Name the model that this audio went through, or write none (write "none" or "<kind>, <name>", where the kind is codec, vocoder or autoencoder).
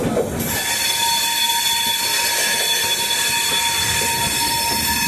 none